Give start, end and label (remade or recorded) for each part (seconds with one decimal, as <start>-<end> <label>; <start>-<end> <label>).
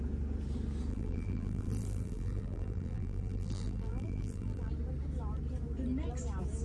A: 0.0-0.9 recorded; 0.9-4.7 remade; 4.7-6.6 recorded